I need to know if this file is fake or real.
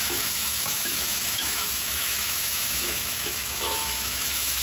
fake